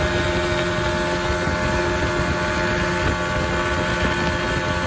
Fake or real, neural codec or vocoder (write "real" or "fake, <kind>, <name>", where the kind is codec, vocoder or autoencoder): real